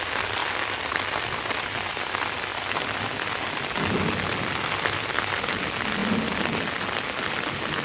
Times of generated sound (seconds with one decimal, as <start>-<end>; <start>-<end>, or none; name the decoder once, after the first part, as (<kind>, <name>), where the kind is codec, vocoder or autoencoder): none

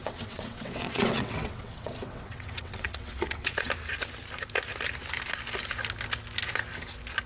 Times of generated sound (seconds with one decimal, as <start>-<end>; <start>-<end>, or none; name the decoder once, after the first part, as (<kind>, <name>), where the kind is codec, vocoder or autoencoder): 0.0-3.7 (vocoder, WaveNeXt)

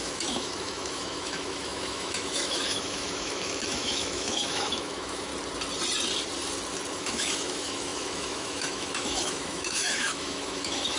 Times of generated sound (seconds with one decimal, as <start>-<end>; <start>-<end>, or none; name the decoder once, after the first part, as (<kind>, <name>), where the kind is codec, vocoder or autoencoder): 0.0-5.3 (autoencoder, DAC-VAE); 6.9-11.0

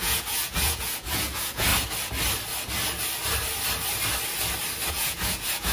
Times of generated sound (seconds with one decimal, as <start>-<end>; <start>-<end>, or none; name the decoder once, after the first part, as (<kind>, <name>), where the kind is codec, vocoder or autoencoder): 0.0-1.7 (vocoder, Vocos); 4.9-5.7

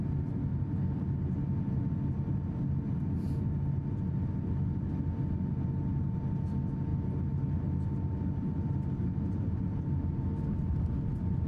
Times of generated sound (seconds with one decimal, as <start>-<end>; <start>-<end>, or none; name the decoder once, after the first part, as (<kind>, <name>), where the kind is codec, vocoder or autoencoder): none